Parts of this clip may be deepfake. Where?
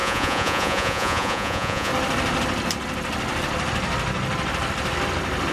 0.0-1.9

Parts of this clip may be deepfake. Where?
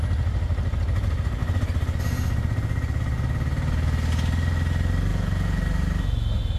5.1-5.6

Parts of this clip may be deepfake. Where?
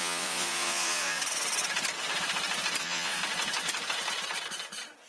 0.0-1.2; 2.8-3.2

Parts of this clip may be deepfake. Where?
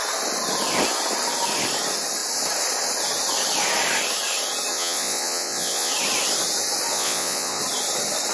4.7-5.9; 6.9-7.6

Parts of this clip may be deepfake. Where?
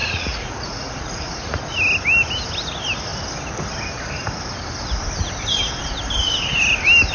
0.0-1.6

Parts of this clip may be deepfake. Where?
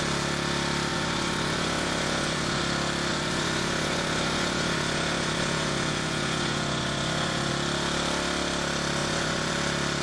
0.9-2.6; 3.1-7.5; 9.0-9.5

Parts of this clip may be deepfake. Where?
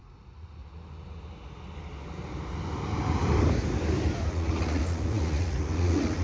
0.0-0.6; 4.3-6.2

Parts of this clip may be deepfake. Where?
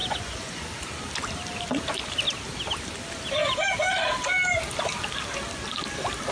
0.0-0.7